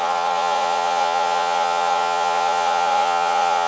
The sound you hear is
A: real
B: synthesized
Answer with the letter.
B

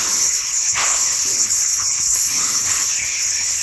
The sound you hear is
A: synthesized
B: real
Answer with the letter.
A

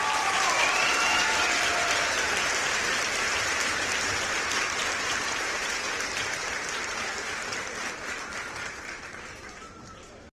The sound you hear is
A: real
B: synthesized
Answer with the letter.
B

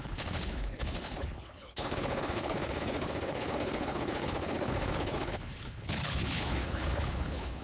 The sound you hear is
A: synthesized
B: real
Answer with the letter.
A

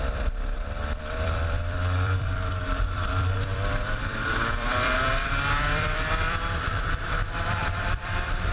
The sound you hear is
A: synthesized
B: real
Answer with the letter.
A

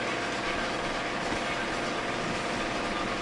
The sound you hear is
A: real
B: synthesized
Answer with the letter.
A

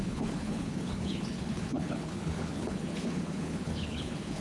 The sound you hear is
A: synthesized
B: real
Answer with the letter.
A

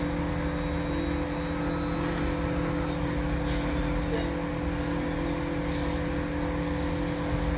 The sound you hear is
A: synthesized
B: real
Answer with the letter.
B